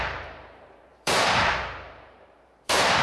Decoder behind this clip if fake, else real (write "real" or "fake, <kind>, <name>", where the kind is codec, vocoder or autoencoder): fake, vocoder, BigVGAN v2